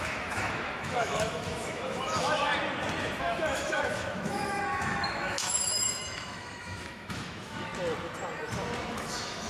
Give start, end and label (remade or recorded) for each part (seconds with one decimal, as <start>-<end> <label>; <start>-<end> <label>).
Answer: 0.0-2.5 remade; 2.5-3.2 recorded; 3.2-7.7 remade; 7.7-8.9 recorded; 8.9-9.5 remade